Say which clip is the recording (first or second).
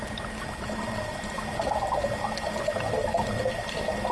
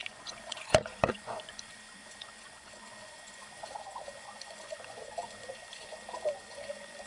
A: first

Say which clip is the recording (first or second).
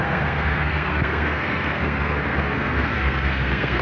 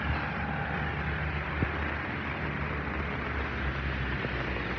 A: second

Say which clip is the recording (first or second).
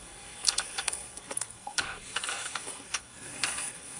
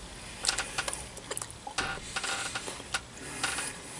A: second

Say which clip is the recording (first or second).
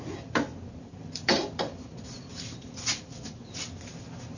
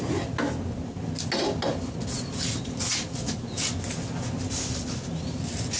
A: second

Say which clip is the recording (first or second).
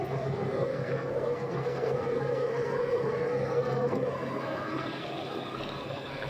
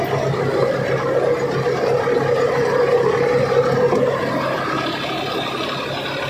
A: second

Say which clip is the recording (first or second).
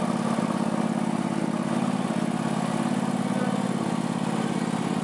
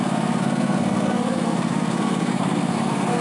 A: first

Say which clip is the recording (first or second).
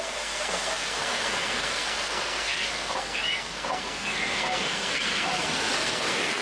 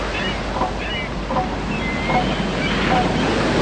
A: second